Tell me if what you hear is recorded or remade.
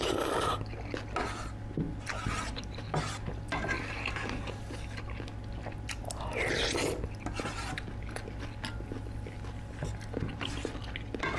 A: recorded